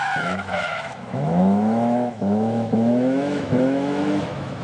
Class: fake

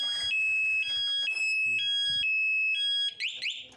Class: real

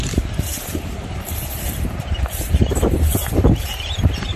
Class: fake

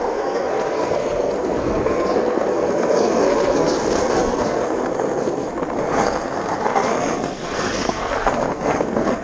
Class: fake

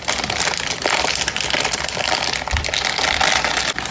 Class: real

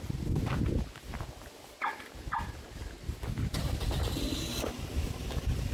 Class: real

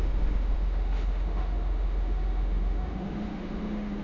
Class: fake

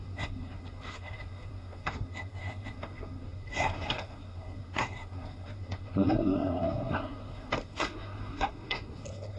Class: fake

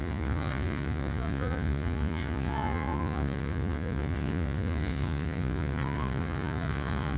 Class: fake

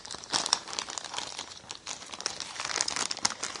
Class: fake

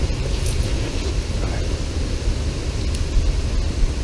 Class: real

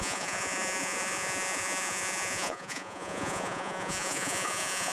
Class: fake